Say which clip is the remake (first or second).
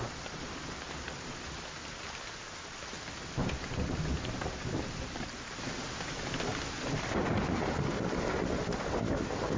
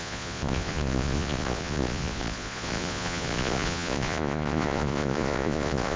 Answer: second